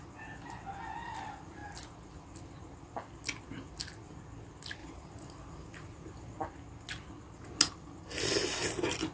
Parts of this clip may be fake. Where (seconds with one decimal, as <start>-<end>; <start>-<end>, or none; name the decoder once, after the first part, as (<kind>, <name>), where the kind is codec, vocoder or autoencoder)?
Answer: 4.8-6.4 (vocoder, BigVGAN v2)